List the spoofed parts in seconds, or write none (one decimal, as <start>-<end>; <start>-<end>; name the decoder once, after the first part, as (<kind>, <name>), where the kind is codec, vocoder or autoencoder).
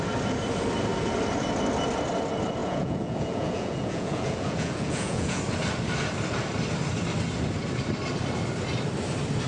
2.6-5.4 (vocoder, Vocos)